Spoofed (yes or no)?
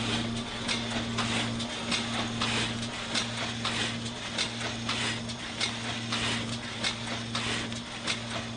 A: no